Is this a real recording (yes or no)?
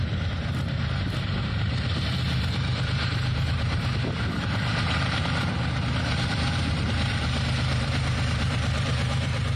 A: no